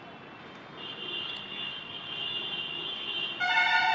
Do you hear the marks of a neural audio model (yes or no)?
no